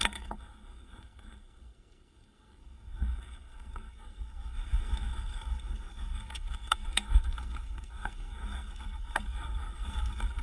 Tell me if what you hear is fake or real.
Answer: fake